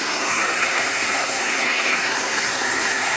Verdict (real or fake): fake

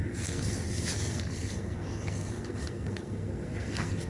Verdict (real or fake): fake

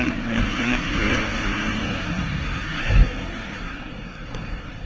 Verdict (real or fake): fake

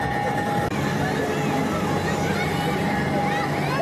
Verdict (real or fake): real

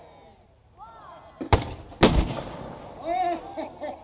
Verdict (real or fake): real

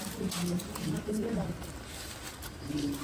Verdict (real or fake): real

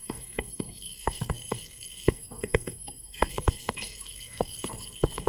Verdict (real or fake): fake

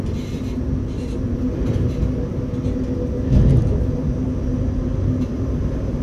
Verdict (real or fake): real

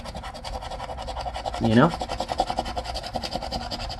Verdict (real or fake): real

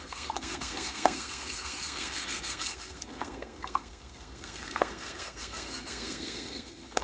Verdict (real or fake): fake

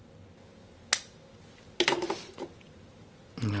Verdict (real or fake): real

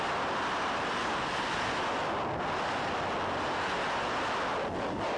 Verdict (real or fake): real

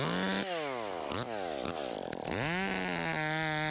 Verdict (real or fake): real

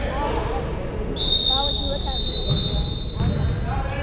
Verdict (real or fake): real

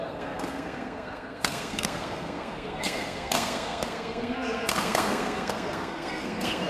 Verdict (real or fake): fake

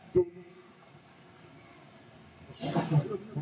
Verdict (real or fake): real